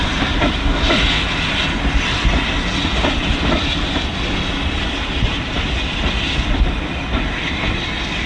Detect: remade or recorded recorded